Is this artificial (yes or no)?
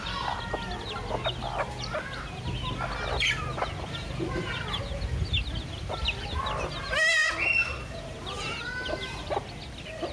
no